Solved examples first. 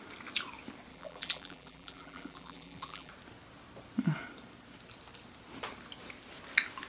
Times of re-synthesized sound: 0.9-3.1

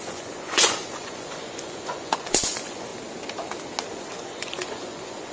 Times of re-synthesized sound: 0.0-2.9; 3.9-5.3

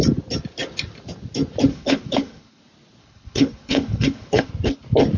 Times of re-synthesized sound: 1.7-2.6; 3.0-4.5